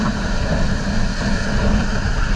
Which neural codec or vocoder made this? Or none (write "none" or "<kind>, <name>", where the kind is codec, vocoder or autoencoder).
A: none